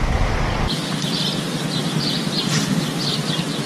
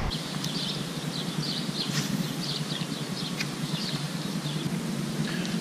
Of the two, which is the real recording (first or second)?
first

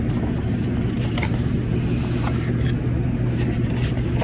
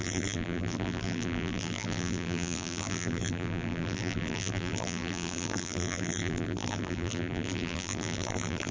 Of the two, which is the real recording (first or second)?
first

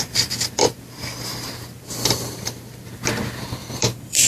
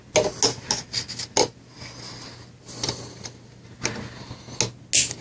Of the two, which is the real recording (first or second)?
second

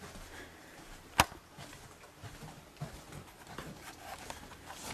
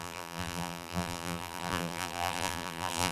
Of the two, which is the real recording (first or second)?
first